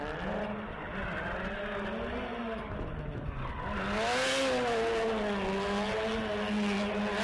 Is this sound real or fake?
real